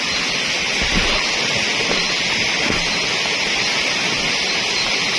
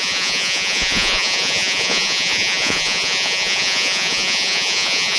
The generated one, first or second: second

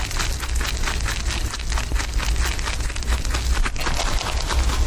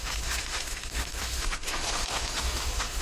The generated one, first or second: second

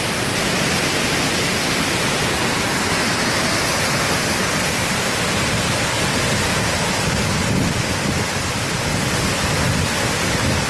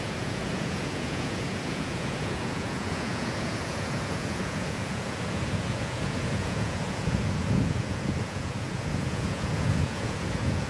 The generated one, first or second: second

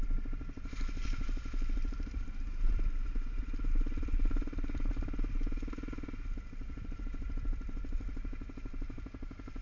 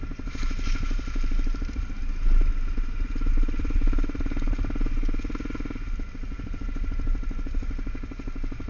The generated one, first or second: first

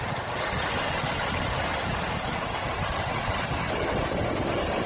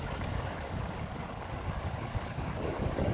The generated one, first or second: second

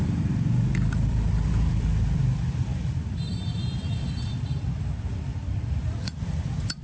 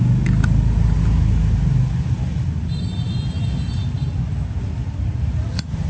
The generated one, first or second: first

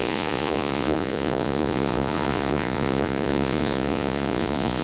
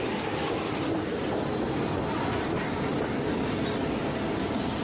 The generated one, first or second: first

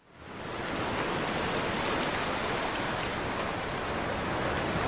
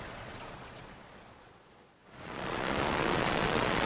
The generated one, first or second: second